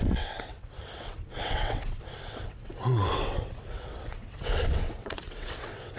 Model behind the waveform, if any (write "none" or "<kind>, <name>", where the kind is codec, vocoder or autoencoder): vocoder, WaveNeXt